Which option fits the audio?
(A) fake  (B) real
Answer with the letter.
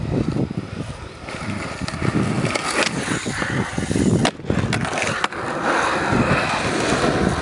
B